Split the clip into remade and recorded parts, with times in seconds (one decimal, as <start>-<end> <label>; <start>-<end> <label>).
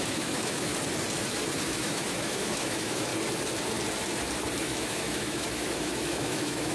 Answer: 0.0-0.7 remade; 0.7-1.6 recorded; 1.6-3.1 remade; 3.1-4.6 recorded; 4.6-6.7 remade